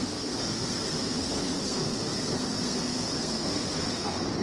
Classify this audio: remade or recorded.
remade